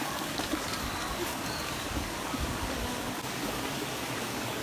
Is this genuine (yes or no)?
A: no